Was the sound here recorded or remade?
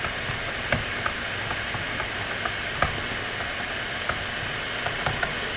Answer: recorded